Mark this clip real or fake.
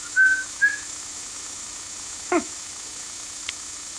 fake